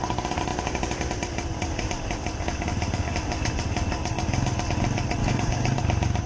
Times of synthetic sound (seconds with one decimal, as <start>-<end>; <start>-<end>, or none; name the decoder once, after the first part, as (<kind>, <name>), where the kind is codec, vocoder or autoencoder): 5.2-5.8 (codec, DAC)